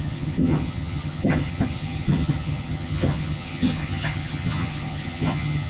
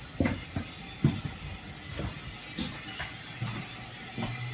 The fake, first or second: first